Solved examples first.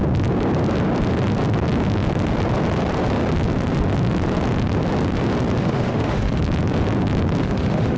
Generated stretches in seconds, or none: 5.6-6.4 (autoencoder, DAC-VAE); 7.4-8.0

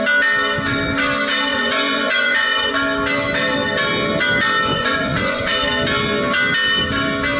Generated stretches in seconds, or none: 1.5-2.7 (vocoder, Vocos); 4.7-5.5

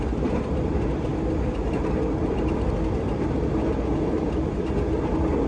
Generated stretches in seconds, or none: none

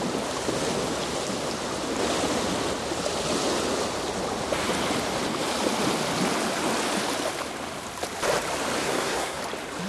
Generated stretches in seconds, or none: 8.8-9.4 (codec, SNAC)

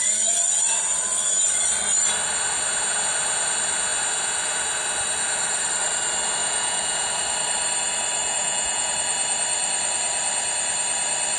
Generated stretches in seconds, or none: 6.4-7.1 (vocoder, Vocos); 8.2-8.9